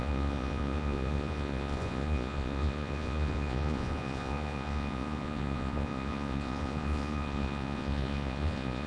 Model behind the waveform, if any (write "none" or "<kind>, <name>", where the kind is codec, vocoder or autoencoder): vocoder, Vocos